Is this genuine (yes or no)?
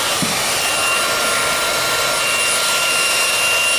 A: yes